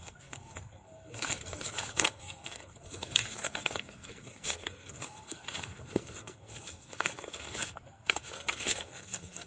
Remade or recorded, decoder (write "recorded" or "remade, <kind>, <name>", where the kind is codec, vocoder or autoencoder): remade, codec, SNAC